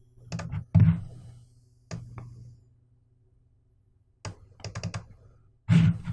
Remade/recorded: recorded